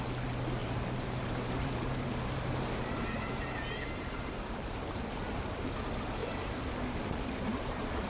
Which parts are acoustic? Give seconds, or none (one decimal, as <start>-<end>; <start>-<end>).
0.0-0.6; 4.6-8.1